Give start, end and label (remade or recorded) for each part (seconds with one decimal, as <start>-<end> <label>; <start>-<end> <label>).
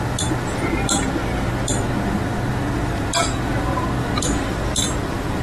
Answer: 0.0-4.8 recorded; 4.8-5.4 remade